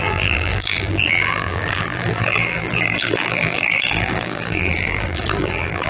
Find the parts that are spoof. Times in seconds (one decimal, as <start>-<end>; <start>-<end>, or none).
0.0-5.9